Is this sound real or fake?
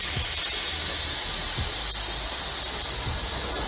real